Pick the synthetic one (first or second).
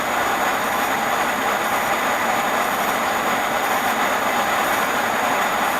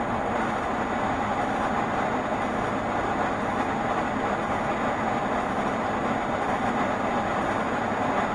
first